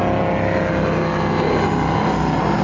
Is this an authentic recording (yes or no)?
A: yes